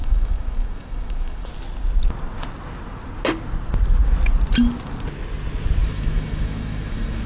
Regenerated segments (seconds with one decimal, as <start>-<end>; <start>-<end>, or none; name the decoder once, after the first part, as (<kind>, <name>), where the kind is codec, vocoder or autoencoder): 0.0-1.5 (autoencoder, DAC-VAE); 5.8-7.3